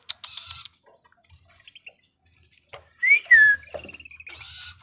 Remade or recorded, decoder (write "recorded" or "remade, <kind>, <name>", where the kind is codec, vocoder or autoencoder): recorded